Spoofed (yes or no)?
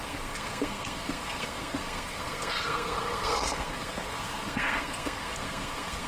yes